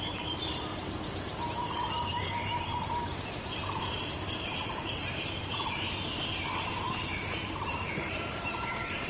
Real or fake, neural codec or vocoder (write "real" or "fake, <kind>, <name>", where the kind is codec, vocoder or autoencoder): fake, vocoder, BigVGAN v2